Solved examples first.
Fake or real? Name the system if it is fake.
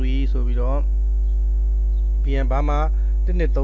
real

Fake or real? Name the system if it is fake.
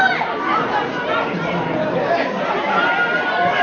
real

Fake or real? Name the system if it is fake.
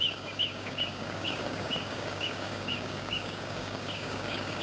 fake, codec, DAC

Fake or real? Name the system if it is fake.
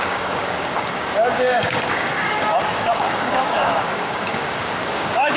fake, codec, DAC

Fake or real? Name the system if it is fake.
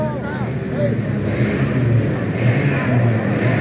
real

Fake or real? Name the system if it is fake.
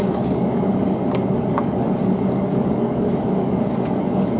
fake, codec, DAC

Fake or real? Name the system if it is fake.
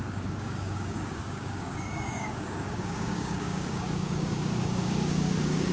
fake, codec, DAC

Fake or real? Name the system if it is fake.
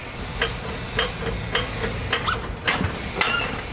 real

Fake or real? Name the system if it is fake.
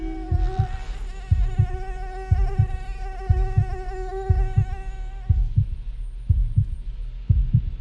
real